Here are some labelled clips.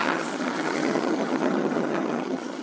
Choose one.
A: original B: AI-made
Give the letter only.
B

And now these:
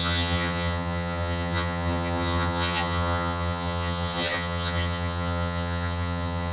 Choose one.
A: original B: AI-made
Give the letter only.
B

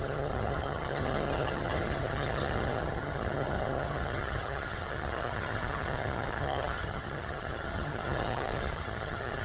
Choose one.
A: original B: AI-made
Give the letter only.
B